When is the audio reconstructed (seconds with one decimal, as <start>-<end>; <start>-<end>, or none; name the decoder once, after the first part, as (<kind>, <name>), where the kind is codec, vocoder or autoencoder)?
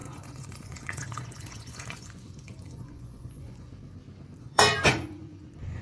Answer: 0.0-3.7 (vocoder, Vocos); 4.4-5.8